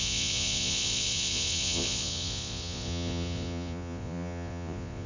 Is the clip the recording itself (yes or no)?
no